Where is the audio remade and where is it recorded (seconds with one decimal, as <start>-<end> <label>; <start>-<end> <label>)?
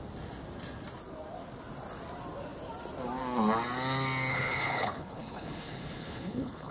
0.0-4.3 recorded; 4.3-6.7 remade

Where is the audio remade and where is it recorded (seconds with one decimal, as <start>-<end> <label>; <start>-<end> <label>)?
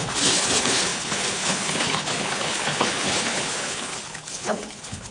0.0-5.1 remade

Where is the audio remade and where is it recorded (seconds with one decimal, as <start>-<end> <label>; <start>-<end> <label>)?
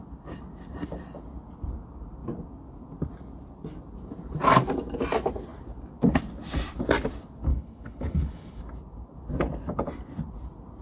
0.0-7.5 recorded; 7.5-8.6 remade; 8.6-10.8 recorded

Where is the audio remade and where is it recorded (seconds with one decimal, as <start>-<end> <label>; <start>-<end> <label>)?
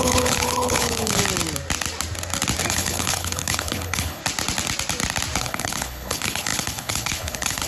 0.0-1.2 remade; 1.2-2.7 recorded; 2.7-4.2 remade; 4.2-5.4 recorded; 5.4-7.7 remade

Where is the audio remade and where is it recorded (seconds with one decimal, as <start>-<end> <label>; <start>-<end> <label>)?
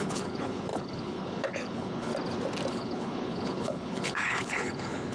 0.0-2.1 remade; 2.1-2.7 recorded; 2.7-5.1 remade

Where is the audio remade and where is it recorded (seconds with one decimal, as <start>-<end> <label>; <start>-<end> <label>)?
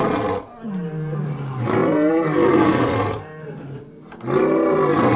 0.0-5.2 recorded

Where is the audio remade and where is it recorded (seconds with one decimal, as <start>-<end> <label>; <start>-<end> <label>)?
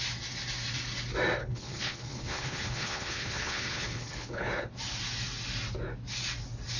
0.0-1.4 recorded; 1.4-4.7 remade; 4.7-6.8 recorded